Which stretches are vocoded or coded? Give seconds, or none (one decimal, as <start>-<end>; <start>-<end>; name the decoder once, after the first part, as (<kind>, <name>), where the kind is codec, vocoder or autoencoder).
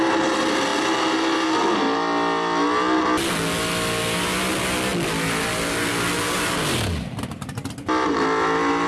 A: none